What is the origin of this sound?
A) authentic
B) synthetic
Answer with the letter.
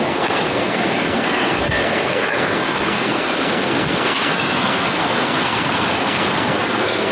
B